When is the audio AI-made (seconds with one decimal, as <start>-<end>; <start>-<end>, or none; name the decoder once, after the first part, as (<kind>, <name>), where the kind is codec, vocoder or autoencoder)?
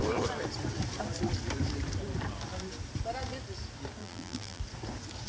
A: 4.0-4.6 (vocoder, BigVGAN v2)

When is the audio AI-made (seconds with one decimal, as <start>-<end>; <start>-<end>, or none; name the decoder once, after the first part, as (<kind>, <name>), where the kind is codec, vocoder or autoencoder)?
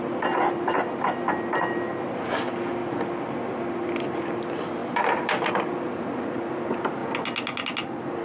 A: 0.0-2.8 (vocoder, BigVGAN v2); 3.7-7.0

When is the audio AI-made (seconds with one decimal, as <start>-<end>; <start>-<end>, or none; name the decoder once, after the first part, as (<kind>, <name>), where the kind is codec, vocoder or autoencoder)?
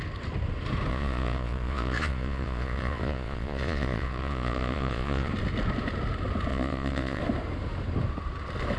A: 0.9-5.3 (vocoder, Vocos); 6.5-7.2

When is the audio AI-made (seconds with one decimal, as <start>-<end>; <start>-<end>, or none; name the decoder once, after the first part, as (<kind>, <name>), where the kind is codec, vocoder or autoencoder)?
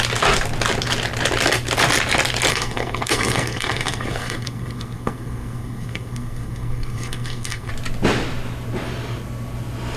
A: 2.5-7.7 (codec, SNAC)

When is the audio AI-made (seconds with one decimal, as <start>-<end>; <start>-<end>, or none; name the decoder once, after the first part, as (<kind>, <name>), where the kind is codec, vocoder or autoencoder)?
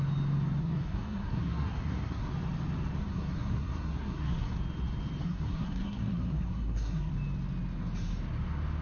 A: 0.6-2.3 (codec, SNAC); 3.0-4.6; 5.2-7.1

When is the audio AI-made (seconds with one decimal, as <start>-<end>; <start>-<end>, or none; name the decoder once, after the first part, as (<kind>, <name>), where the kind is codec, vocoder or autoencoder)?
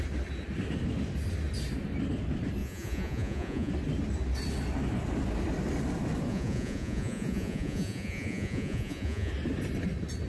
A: 2.6-3.7 (vocoder, Vocos); 6.3-9.3